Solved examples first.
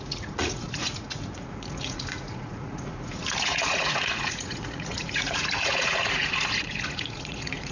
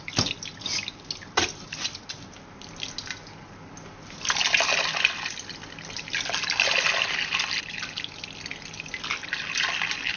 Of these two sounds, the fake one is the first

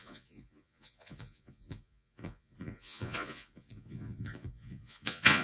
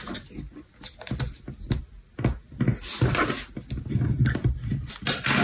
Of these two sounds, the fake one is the first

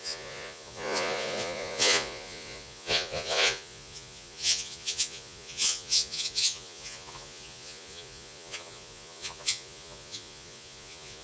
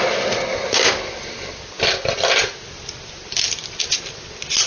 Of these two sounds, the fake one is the first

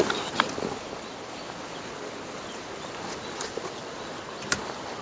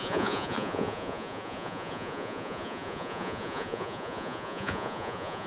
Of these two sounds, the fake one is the second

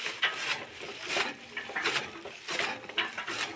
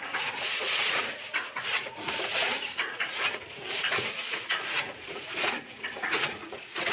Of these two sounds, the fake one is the second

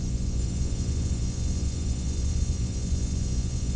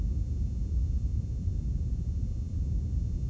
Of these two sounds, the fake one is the first